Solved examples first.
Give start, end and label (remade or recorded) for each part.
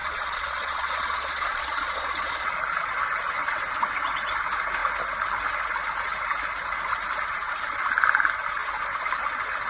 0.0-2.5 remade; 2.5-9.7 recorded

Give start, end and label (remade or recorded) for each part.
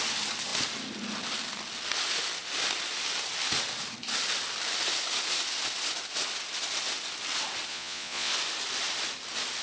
0.0-7.7 recorded; 7.7-8.3 remade; 8.3-9.6 recorded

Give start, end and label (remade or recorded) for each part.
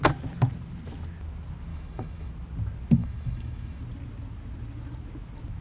0.0-1.7 recorded; 1.7-2.3 remade; 2.3-3.0 recorded; 3.0-3.8 remade; 3.8-5.6 recorded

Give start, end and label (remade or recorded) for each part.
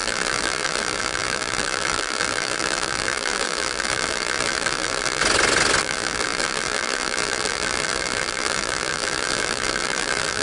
0.0-5.2 remade; 5.2-5.8 recorded; 5.8-10.4 remade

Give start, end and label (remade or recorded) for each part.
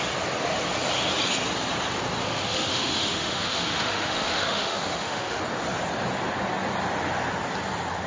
0.0-2.2 recorded; 2.2-5.4 remade; 5.4-8.1 recorded